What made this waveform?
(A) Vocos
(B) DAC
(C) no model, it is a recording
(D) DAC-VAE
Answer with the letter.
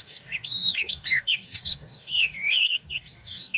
B